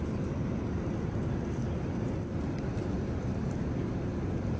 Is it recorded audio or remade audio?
recorded